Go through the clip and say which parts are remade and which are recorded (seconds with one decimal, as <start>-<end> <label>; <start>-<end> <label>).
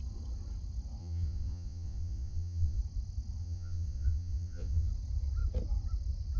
0.0-1.0 recorded; 1.0-2.8 remade; 2.8-3.4 recorded; 3.4-4.9 remade; 4.9-6.4 recorded